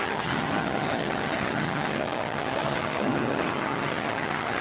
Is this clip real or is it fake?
fake